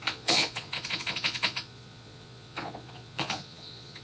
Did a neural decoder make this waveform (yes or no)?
yes